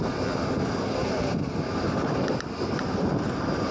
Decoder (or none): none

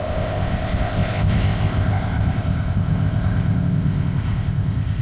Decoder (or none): codec, ZipCodec